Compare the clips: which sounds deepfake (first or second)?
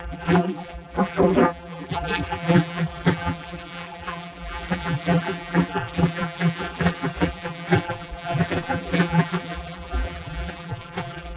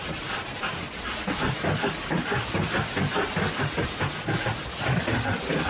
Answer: first